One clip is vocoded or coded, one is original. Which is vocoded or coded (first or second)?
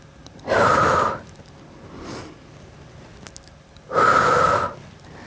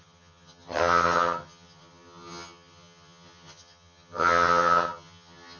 second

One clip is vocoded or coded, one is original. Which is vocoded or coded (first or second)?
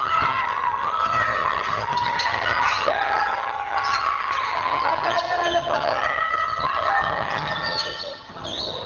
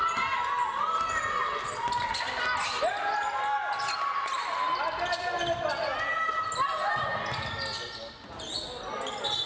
first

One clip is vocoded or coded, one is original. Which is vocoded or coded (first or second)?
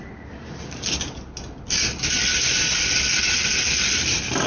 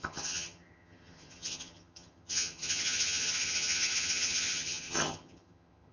second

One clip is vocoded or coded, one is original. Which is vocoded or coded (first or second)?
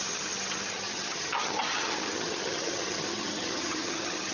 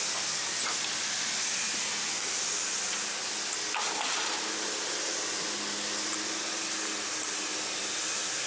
first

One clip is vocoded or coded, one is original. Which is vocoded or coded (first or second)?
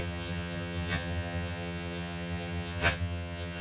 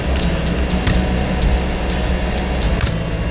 first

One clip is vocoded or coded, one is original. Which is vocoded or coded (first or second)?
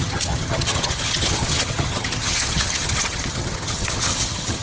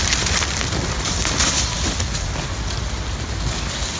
first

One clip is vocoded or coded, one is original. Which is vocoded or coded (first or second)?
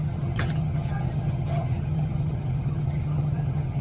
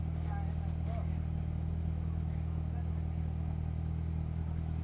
first